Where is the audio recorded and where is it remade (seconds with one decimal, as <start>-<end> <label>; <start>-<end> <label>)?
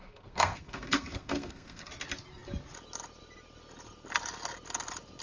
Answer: 0.0-1.9 remade; 1.9-5.2 recorded